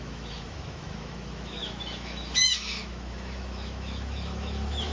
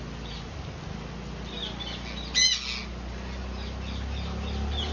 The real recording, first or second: second